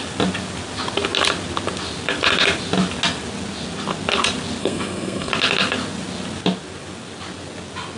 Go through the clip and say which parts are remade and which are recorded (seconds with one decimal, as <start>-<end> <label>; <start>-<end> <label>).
0.0-4.6 recorded; 4.6-5.3 remade; 5.3-8.0 recorded